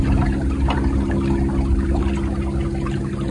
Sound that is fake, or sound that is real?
real